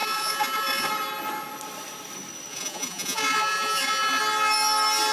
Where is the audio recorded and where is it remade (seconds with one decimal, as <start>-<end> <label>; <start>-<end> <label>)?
0.0-0.9 remade; 0.9-2.5 recorded; 2.5-4.2 remade; 4.2-5.1 recorded